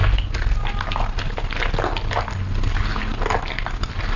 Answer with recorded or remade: recorded